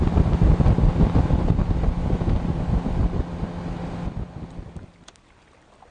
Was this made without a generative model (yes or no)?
yes